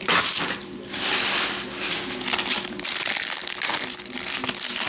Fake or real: real